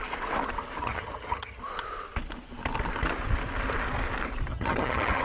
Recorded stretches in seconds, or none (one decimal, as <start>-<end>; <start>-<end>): 0.0-0.8; 1.6-4.5